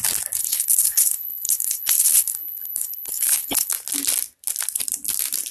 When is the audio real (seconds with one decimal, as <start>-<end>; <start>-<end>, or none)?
0.0-0.4; 3.7-5.5